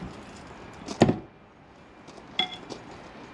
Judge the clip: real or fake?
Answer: real